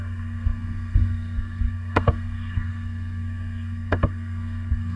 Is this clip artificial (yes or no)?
yes